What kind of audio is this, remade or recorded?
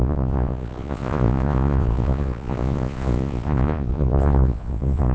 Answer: remade